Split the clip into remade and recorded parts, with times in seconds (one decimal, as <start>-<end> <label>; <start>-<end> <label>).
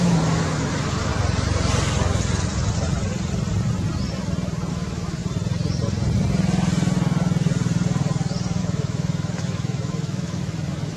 0.0-1.1 remade; 1.1-4.7 recorded; 4.7-5.2 remade; 5.2-8.6 recorded; 8.6-11.0 remade